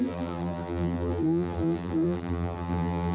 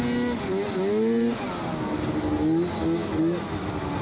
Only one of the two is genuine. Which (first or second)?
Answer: second